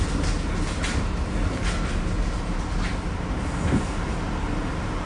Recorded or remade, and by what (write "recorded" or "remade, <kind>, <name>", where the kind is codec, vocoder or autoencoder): recorded